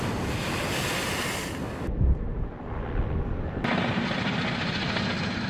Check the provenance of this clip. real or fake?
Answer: real